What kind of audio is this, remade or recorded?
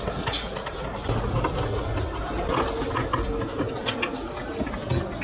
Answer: recorded